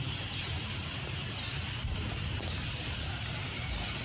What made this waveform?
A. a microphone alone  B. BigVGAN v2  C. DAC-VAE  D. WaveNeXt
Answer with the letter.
A